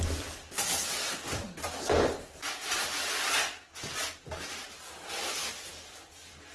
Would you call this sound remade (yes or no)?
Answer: no